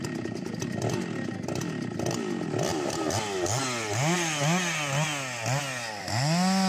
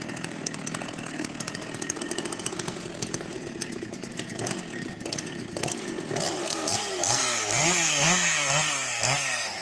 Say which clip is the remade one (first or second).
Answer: second